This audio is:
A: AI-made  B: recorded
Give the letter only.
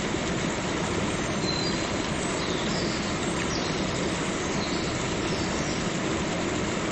B